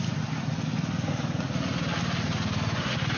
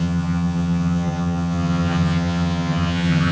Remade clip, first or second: second